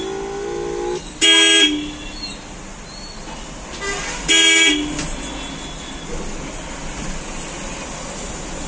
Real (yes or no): yes